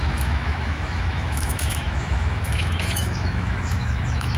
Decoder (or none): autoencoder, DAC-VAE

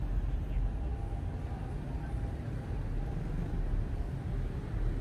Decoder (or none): none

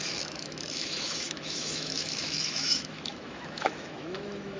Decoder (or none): autoencoder, DAC-VAE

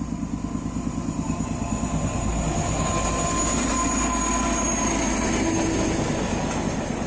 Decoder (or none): none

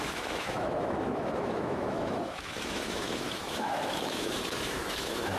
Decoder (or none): autoencoder, DAC-VAE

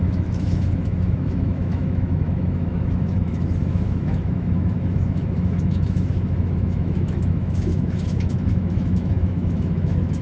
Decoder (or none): autoencoder, DAC-VAE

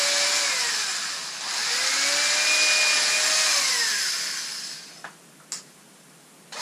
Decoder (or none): none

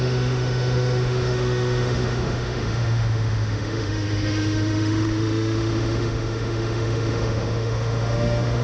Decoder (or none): autoencoder, DAC-VAE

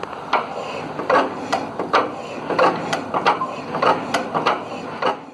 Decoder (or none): none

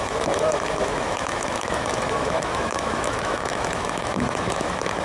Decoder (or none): autoencoder, DAC-VAE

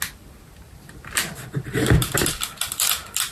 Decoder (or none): none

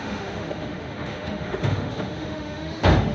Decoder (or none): autoencoder, DAC-VAE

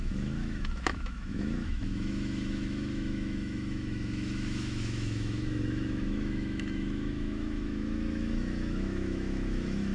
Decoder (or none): autoencoder, DAC-VAE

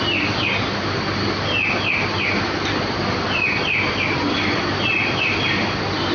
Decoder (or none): none